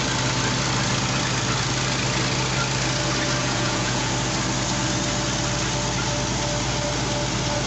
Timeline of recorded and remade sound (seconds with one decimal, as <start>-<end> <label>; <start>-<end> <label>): 0.0-3.4 recorded; 3.4-4.1 remade; 4.1-7.7 recorded